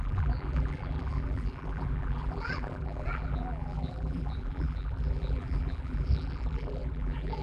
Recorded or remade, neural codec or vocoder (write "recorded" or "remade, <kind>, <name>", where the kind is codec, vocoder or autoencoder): remade, vocoder, BigVGAN v2